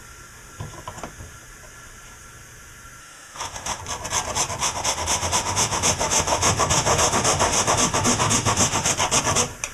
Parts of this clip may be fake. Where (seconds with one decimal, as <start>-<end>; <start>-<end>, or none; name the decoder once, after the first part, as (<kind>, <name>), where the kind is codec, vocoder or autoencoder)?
3.0-3.8 (autoencoder, DAC-VAE); 4.6-8.9